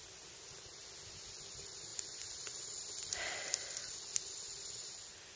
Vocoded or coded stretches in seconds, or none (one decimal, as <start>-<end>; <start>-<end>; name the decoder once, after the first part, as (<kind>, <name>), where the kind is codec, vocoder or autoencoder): none